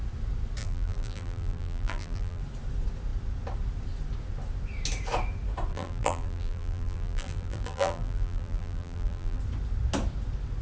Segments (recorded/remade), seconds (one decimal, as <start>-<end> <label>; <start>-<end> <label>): 0.0-0.6 recorded; 0.6-2.4 remade; 2.4-5.7 recorded; 5.7-9.4 remade; 9.4-10.6 recorded